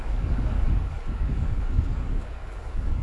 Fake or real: fake